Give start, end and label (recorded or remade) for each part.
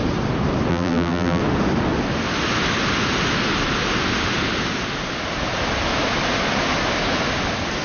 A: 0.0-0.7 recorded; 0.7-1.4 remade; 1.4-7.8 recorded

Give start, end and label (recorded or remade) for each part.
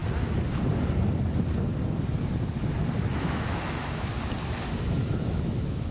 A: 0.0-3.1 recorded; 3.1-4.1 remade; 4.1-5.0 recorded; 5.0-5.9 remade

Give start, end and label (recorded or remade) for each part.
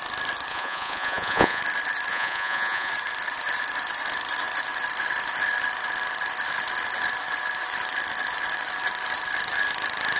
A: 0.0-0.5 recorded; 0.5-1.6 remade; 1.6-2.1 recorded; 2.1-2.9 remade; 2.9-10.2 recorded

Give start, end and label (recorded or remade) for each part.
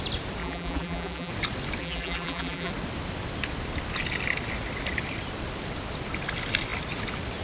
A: 0.0-0.4 recorded; 0.4-1.3 remade; 1.3-1.8 recorded; 1.8-2.7 remade; 2.7-7.4 recorded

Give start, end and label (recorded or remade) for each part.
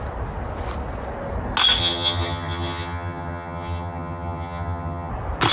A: 0.0-1.8 recorded; 1.8-5.1 remade; 5.1-5.5 recorded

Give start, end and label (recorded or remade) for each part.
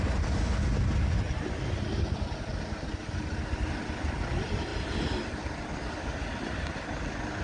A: 0.0-7.4 recorded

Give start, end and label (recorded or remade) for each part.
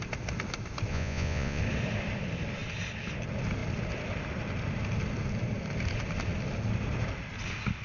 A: 0.0-0.9 recorded; 0.9-1.6 remade; 1.6-7.8 recorded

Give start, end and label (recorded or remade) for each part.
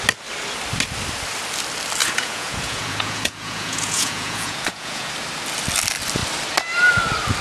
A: 0.0-2.0 recorded; 2.0-5.1 remade; 5.1-7.4 recorded